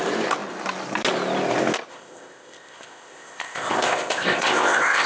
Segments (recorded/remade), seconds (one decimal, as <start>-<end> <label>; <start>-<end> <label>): 0.0-1.9 recorded; 1.9-5.1 remade